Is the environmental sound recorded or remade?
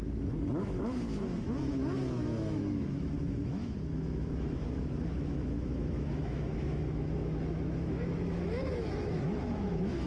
remade